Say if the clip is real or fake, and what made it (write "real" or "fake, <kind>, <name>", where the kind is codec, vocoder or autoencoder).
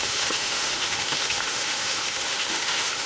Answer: fake, autoencoder, DAC-VAE